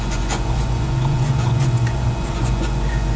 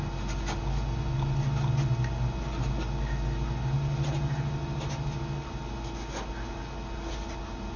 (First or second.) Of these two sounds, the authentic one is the second